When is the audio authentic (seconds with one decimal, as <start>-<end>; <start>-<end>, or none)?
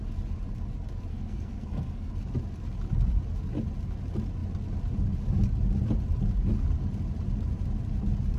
0.0-1.1; 2.1-8.4